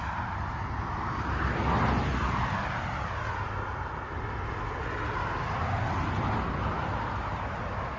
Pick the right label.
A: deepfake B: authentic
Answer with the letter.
B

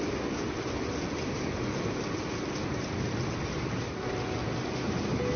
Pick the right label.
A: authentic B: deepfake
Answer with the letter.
A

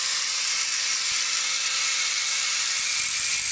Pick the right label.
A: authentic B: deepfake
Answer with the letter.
A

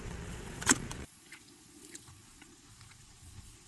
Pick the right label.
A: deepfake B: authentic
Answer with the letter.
A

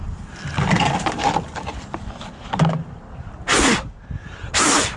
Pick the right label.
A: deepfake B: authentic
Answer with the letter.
B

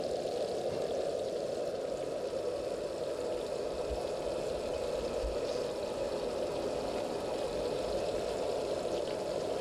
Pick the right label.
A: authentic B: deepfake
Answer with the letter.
A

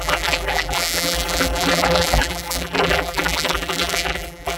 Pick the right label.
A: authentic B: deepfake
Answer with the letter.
B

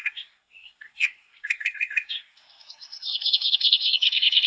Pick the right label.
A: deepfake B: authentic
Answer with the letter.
A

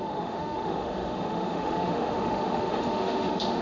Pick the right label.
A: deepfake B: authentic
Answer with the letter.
A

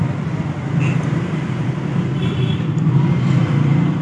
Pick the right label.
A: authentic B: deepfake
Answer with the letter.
B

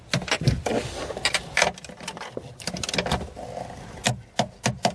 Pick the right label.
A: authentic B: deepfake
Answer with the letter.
A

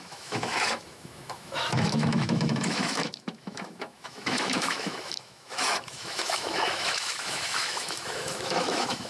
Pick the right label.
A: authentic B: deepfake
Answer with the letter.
B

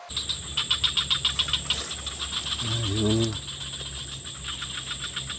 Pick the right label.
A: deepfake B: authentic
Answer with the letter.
B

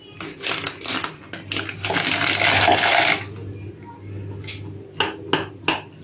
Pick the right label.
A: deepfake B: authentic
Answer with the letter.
B